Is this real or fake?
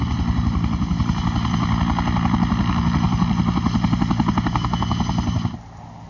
real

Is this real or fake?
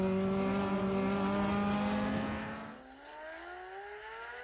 real